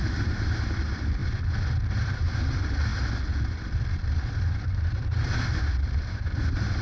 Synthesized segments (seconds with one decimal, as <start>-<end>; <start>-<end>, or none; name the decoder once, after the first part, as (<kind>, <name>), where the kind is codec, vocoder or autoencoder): 0.0-1.2 (vocoder, BigVGAN v2); 1.9-2.9; 4.0-6.8